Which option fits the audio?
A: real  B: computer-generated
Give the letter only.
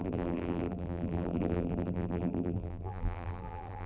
B